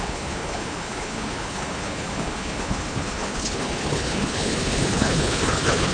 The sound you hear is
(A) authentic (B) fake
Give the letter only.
B